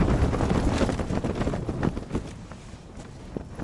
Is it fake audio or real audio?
real